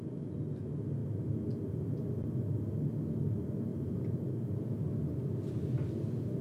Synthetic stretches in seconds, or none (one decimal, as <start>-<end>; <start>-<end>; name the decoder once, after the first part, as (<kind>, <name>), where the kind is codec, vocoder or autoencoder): 3.7-4.9 (vocoder, BigVGAN v2)